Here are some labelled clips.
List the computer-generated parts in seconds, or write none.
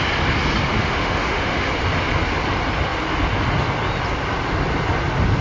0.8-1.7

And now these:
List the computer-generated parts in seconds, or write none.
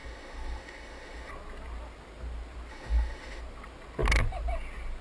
0.0-1.3; 2.7-3.4